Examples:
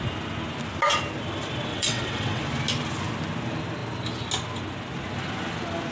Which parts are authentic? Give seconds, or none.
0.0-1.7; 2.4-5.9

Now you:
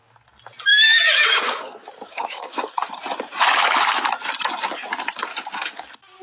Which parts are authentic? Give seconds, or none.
0.0-0.7; 2.9-5.3; 5.8-6.2

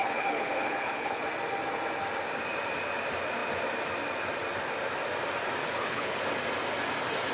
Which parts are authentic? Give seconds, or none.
1.2-5.6; 6.2-7.3

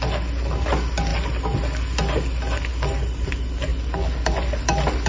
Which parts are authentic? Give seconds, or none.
0.0-5.1

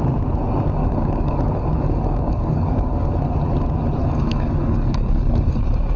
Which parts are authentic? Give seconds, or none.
0.0-0.8; 3.1-4.0; 5.6-6.0

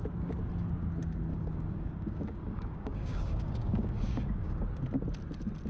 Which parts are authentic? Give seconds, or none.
0.0-1.3; 4.6-5.7